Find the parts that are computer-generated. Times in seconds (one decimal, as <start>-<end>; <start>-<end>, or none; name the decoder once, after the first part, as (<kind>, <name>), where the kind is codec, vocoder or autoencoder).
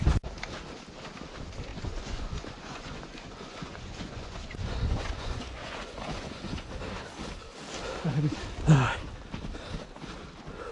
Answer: 1.7-6.7 (vocoder, Vocos)